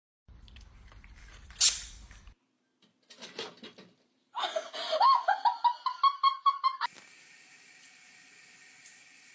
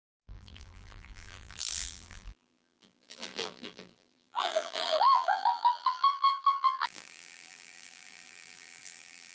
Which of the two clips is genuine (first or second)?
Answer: first